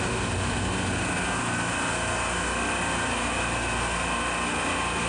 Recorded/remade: recorded